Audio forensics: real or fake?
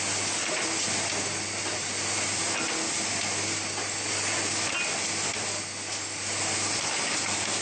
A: real